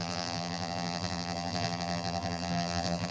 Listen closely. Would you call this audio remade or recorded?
remade